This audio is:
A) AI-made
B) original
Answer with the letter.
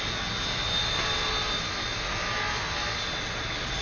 B